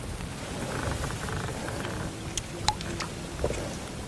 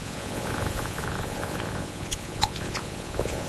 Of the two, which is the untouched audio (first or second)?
first